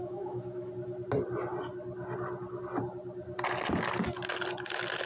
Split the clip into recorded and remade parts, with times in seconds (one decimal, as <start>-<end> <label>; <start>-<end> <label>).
0.0-0.7 remade; 0.7-5.1 recorded